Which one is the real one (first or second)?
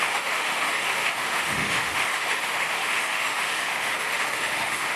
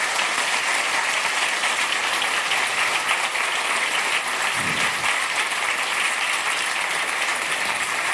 second